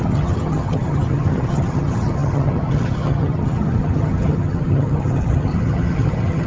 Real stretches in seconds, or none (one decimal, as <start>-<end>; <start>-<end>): none

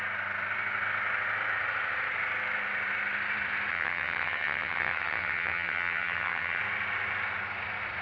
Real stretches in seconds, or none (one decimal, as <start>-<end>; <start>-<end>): 0.0-3.7; 6.6-8.0

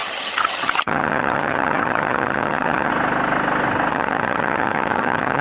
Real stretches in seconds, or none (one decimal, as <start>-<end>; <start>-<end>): 2.9-3.9

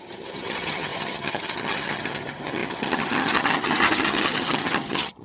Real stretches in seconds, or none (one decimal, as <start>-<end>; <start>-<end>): none

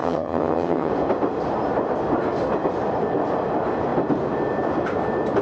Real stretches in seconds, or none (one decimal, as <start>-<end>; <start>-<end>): 0.9-5.4

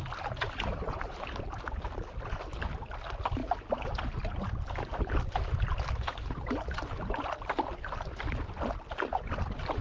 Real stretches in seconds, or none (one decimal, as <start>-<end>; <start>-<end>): 0.0-9.8

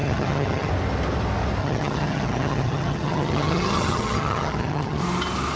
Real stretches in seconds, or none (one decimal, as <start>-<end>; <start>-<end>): 0.7-1.6; 5.0-5.6

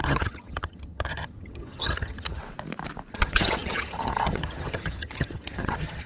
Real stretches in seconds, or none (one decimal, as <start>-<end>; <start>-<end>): 2.4-3.1